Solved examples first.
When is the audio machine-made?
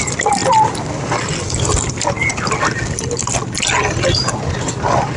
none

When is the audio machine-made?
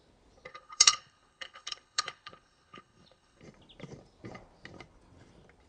0.5-3.4